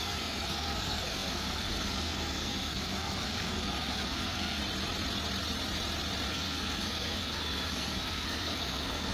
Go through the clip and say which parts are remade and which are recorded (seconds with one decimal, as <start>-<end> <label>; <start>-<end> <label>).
0.0-4.6 remade; 4.6-6.3 recorded; 6.3-9.1 remade